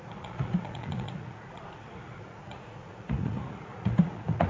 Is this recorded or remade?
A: remade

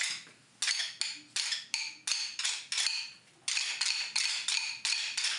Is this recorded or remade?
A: recorded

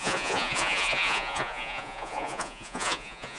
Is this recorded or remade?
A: remade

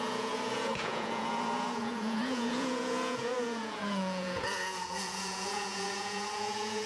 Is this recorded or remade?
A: remade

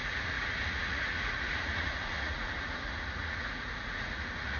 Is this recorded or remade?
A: remade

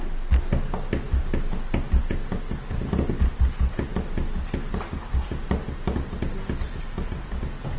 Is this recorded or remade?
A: recorded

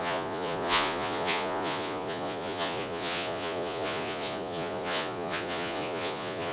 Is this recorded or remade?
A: remade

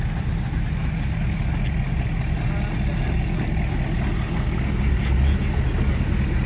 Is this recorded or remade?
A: recorded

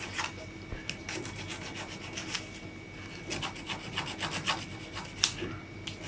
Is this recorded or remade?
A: recorded